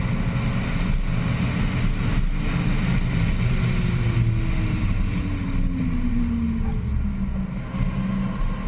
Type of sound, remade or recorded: recorded